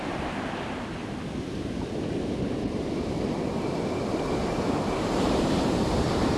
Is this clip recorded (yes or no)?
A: yes